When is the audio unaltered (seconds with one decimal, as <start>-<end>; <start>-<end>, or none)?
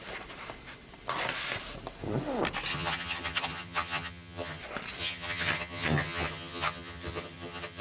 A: 0.0-2.7; 4.6-5.0